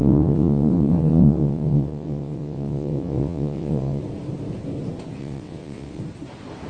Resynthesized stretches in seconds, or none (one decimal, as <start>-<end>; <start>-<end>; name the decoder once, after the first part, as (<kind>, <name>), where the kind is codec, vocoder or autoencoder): 0.0-4.0 (vocoder, WaveNeXt); 5.2-6.0